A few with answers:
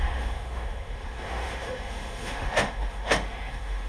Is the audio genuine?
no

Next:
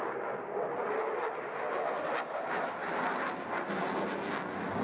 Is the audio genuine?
yes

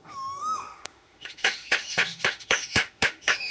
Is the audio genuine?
no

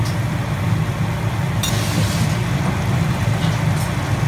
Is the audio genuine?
yes